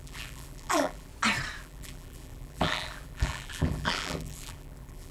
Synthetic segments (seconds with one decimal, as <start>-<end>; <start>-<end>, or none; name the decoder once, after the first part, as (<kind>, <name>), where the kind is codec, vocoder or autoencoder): 0.0-1.1 (vocoder, BigVGAN v2); 1.6-5.1